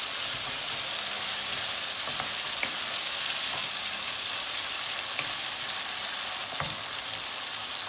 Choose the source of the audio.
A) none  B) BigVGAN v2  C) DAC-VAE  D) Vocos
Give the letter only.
A